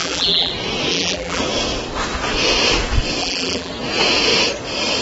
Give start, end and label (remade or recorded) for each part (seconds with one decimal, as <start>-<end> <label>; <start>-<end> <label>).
0.0-0.5 remade; 0.5-0.9 recorded; 0.9-1.4 remade; 1.4-3.2 recorded; 3.2-3.7 remade; 3.7-5.0 recorded